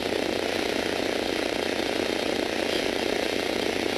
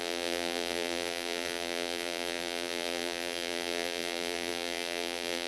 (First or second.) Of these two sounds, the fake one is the second